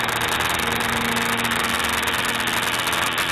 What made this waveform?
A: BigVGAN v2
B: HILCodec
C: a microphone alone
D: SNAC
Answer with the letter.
C